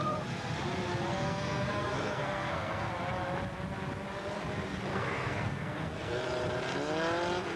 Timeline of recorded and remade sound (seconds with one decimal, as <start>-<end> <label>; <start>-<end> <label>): 0.0-1.1 recorded; 1.1-2.9 remade; 2.9-4.9 recorded; 4.9-6.2 remade; 6.2-7.6 recorded